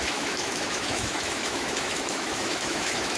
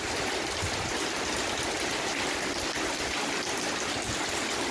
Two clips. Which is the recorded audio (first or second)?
second